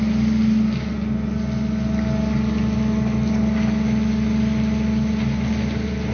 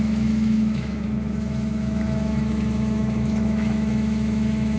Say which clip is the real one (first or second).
first